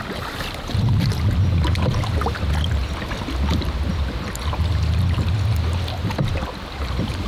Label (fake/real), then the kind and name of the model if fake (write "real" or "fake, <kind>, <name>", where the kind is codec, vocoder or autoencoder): real